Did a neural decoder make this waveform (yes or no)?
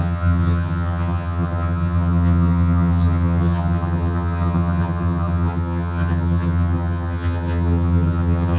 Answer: yes